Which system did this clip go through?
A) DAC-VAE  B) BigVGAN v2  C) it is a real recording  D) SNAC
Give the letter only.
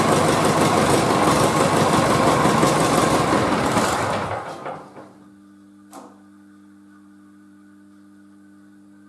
B